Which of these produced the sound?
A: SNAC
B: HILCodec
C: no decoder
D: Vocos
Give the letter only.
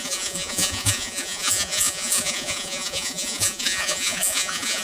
D